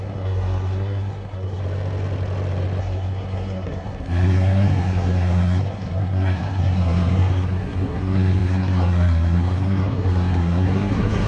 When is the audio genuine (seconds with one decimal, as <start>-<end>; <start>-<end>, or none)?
1.6-2.8

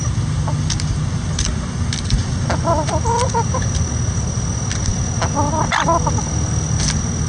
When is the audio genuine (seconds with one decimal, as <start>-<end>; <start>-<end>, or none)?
0.0-7.3